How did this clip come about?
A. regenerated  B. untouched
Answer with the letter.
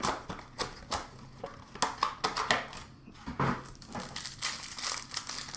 B